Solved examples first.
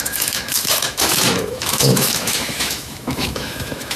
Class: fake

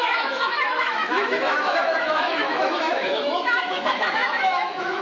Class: fake